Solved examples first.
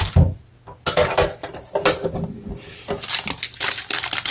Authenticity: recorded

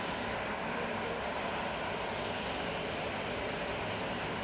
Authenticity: recorded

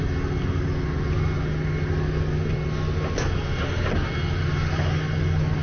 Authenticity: recorded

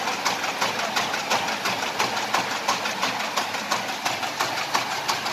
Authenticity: recorded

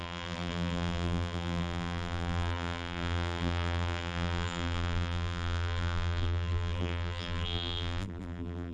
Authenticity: remade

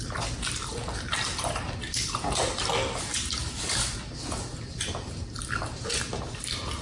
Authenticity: recorded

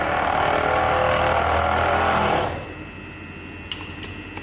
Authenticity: recorded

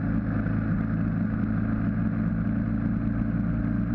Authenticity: recorded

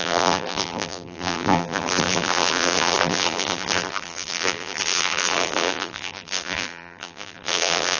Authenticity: remade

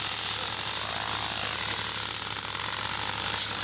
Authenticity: recorded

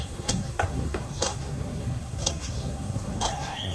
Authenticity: remade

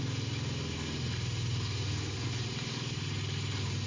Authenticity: recorded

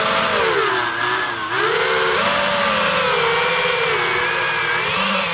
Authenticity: recorded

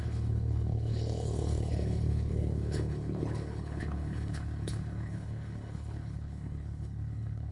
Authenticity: remade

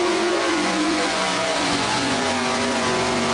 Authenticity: remade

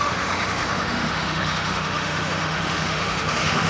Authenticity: remade